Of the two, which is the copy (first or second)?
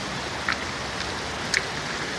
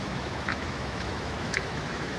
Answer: second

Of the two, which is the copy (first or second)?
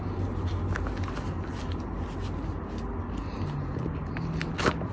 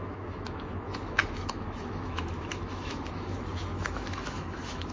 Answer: second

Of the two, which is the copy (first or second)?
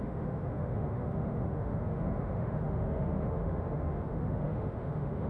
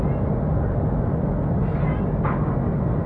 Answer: first